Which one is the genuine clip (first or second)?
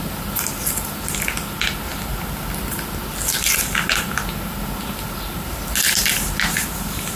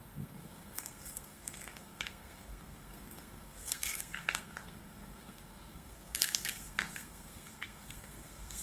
first